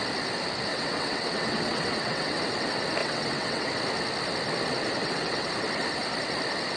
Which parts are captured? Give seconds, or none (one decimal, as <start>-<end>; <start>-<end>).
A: 0.0-0.7; 2.4-3.0; 3.7-5.0; 5.5-6.8